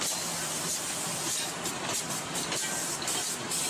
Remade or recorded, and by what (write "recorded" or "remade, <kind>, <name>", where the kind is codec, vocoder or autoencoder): recorded